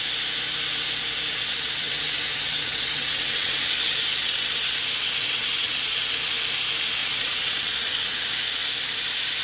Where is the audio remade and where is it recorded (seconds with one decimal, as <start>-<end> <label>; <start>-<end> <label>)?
0.0-1.3 recorded; 1.3-6.0 remade; 6.0-7.0 recorded; 7.0-8.2 remade; 8.2-9.4 recorded